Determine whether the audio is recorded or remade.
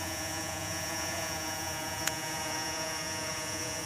remade